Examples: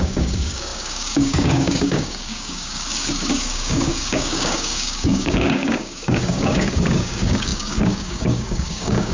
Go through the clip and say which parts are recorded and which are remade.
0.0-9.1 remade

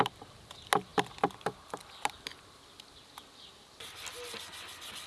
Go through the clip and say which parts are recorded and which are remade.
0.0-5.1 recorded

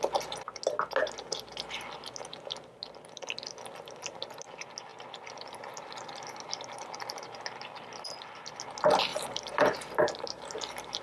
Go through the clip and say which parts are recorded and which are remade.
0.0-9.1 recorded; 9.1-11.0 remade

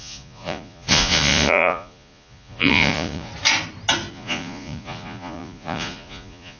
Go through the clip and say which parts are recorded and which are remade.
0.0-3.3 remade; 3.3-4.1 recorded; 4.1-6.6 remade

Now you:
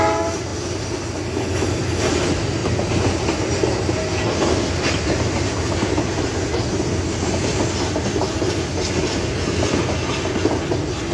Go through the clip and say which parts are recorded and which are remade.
0.0-11.1 recorded